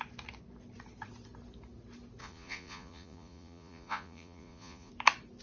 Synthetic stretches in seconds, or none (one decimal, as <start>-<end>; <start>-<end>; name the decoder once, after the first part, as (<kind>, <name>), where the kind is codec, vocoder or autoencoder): 2.2-4.9 (vocoder, Vocos)